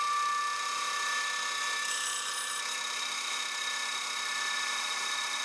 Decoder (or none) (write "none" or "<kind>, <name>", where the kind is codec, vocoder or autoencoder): none